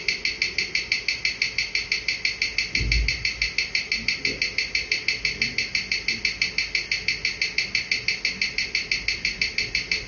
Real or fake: real